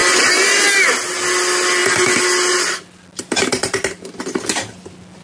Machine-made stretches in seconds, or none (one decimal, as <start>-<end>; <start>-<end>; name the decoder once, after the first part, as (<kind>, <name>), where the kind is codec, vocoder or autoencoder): none

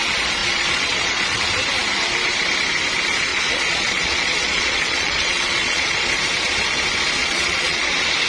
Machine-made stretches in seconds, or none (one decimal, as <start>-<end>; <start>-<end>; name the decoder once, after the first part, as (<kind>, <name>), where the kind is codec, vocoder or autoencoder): 0.4-1.4 (vocoder, Vocos); 3.3-6.1; 7.2-7.8

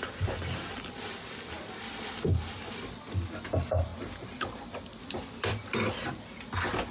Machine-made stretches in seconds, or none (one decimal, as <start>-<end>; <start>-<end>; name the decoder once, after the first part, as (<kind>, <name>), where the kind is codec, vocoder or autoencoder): none

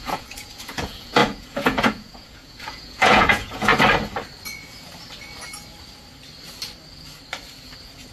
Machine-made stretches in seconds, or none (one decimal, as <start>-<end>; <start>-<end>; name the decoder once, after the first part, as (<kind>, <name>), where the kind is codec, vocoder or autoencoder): 0.0-3.7 (vocoder, Vocos)